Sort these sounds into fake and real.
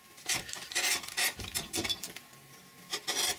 real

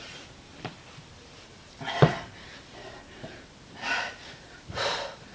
fake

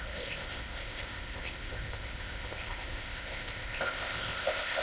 fake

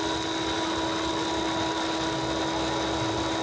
real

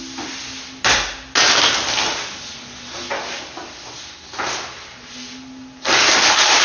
real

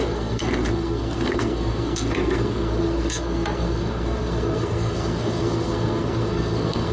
fake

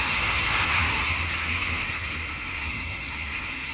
fake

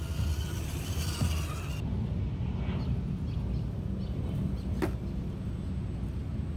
real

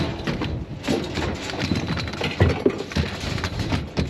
real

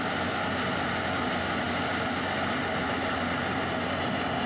real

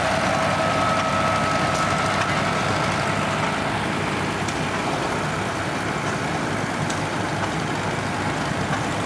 real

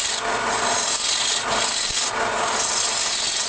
real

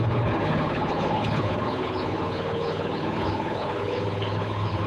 fake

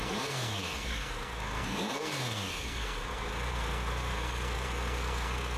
fake